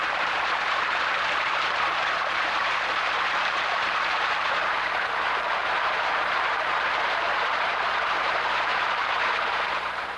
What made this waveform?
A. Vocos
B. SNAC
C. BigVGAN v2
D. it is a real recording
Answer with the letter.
C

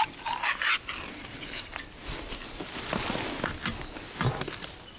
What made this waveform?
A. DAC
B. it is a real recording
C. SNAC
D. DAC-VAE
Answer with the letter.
B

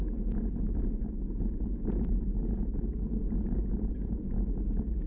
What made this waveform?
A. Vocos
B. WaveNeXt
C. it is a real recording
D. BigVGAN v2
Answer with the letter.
A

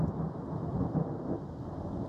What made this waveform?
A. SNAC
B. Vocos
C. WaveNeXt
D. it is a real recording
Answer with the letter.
D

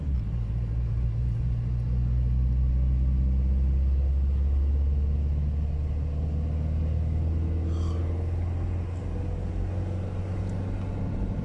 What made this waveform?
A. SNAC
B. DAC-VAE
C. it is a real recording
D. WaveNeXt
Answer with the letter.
C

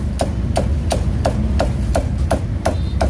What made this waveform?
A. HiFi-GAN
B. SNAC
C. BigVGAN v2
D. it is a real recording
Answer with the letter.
D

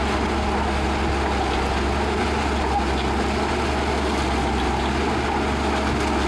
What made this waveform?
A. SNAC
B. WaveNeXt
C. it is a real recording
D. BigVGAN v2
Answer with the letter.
C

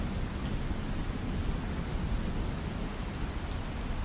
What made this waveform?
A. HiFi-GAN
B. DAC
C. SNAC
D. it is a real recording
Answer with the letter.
D